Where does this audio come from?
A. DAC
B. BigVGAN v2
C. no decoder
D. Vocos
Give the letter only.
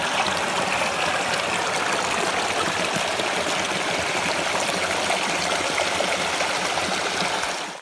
C